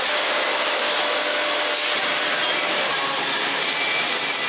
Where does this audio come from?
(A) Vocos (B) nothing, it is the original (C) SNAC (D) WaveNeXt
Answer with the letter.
B